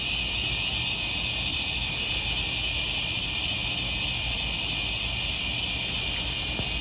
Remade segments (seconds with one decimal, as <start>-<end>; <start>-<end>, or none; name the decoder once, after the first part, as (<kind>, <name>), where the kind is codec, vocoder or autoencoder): 1.5-2.2 (vocoder, BigVGAN v2); 2.7-3.4